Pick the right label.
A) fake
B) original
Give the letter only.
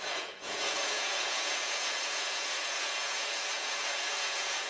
A